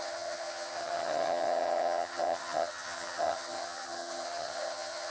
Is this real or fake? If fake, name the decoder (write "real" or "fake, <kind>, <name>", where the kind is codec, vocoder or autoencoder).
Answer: fake, vocoder, HiFi-GAN